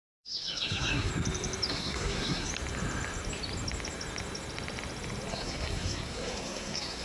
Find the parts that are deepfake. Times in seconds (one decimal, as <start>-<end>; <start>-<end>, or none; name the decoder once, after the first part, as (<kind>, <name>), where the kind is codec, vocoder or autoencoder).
0.0-1.1 (codec, SNAC); 1.7-2.5; 5.3-7.0